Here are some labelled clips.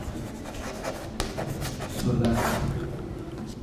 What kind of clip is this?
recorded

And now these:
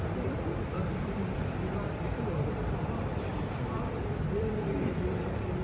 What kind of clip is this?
remade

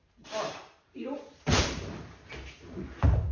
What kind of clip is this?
remade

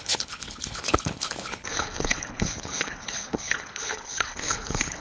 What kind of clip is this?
remade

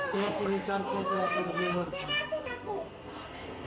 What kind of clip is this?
remade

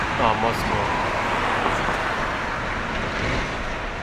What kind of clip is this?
recorded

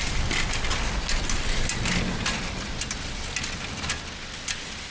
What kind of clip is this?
recorded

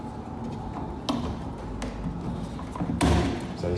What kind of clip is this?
recorded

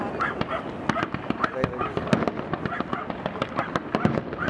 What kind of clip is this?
recorded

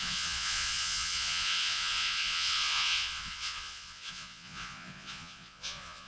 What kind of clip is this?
remade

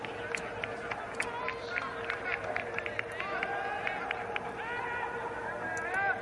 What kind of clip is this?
recorded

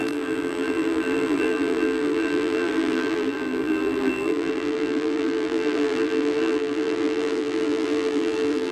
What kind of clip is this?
remade